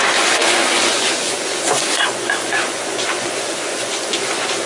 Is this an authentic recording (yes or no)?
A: no